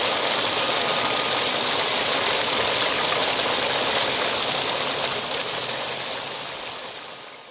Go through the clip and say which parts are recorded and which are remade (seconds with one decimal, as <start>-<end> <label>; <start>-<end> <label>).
0.0-7.5 recorded

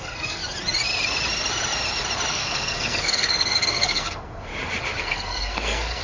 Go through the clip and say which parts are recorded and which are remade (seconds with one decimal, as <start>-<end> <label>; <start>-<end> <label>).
0.0-0.4 remade; 0.4-2.3 recorded; 2.3-4.5 remade; 4.5-5.0 recorded; 5.0-6.0 remade

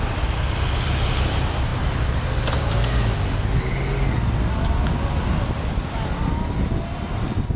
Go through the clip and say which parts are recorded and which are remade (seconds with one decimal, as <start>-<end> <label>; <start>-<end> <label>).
0.0-7.6 recorded

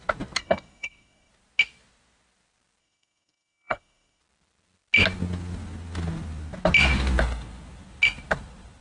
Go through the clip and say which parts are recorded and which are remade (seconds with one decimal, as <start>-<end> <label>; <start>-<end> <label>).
0.0-0.4 recorded; 0.4-1.3 remade; 1.3-2.8 recorded; 2.8-4.2 remade; 4.2-8.8 recorded